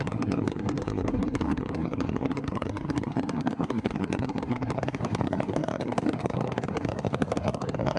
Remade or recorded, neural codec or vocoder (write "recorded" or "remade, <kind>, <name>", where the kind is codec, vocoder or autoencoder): remade, codec, SNAC